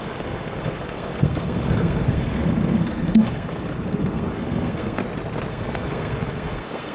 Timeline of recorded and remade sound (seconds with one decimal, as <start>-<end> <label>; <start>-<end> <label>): 0.0-5.0 remade; 5.0-5.5 recorded; 5.5-6.9 remade